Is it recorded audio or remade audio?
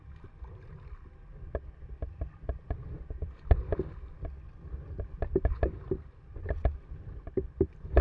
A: recorded